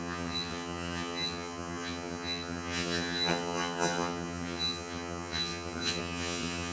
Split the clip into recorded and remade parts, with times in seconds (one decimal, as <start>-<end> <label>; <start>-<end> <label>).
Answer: 0.0-6.7 remade